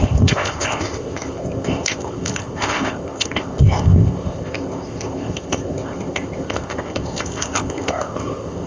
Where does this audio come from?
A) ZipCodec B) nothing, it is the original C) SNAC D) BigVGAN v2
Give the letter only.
A